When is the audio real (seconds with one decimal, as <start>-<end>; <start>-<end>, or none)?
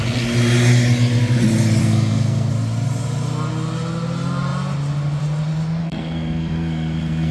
0.0-1.8; 2.5-5.8